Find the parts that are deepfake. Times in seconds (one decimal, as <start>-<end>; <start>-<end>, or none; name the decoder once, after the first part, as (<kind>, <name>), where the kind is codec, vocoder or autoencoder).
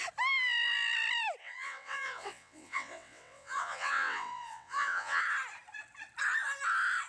1.4-5.2 (vocoder, WaveNeXt)